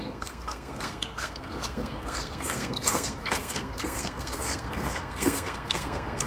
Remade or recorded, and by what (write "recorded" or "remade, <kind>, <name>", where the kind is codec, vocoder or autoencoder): remade, codec, SNAC